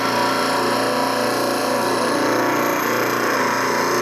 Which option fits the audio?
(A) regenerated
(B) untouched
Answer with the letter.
B